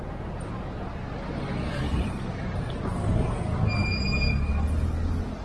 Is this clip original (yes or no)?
yes